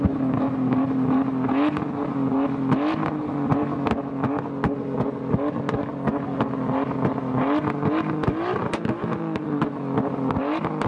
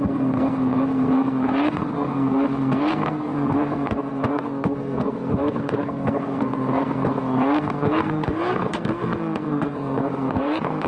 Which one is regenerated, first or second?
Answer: second